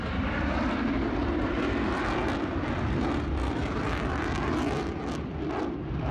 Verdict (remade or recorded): recorded